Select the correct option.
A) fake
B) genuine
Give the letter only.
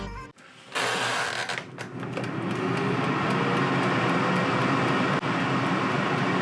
B